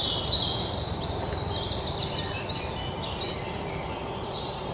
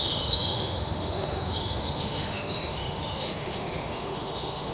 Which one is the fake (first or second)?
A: second